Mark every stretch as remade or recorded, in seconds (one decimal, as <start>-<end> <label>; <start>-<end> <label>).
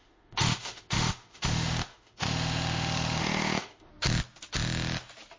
0.0-3.9 remade; 3.9-5.4 recorded